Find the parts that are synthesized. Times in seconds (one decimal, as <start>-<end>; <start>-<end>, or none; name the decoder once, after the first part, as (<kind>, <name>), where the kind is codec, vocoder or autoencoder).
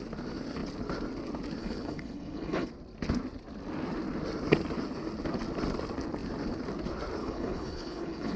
1.6-2.7 (codec, HILCodec); 7.2-8.4